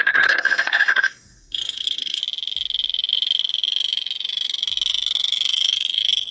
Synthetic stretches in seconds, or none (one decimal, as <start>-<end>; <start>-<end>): 0.0-2.2